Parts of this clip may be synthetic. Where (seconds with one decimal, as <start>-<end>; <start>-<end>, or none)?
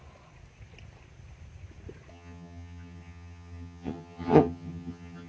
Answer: 2.1-5.3